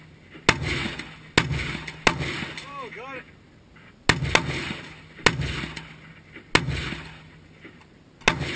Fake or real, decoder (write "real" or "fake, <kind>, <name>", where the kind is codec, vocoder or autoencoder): real